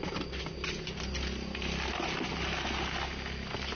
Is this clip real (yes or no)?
yes